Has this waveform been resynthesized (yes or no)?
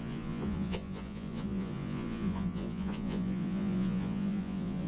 yes